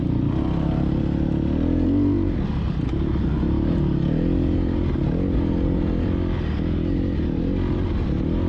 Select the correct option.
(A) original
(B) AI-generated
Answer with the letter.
A